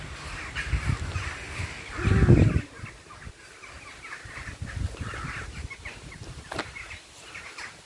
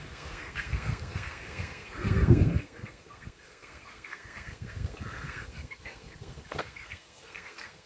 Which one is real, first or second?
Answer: first